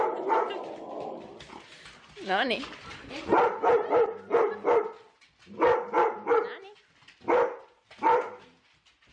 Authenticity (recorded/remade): recorded